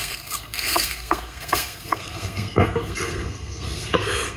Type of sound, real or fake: fake